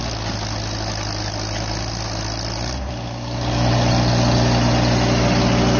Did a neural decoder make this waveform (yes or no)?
no